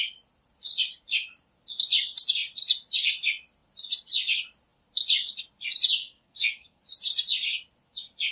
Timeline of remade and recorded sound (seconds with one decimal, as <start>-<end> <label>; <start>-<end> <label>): 0.0-6.0 recorded; 6.0-6.8 remade; 6.8-8.3 recorded